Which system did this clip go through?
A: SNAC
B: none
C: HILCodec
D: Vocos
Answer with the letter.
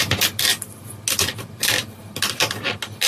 B